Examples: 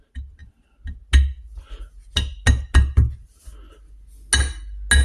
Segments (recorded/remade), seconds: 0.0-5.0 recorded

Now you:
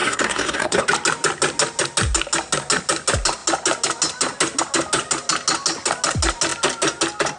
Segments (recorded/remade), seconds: 0.0-0.8 remade; 0.8-7.4 recorded